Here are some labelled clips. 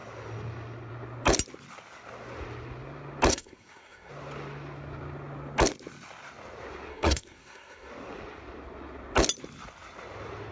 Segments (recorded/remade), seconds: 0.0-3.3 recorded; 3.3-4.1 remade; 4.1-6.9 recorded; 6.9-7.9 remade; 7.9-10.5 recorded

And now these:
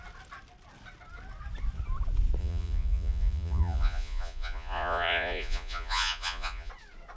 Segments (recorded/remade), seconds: 0.0-2.4 recorded; 2.4-6.7 remade; 6.7-7.2 recorded

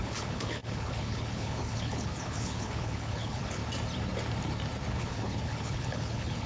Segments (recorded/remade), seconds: 0.0-3.6 remade; 3.6-5.0 recorded; 5.0-6.5 remade

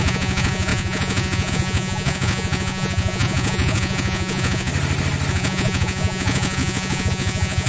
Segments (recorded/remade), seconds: 0.0-4.7 remade; 4.7-5.3 recorded; 5.3-7.7 remade

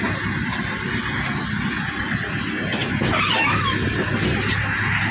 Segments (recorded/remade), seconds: 0.0-5.1 recorded

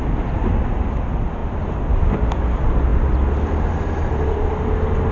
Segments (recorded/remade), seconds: 0.0-5.1 recorded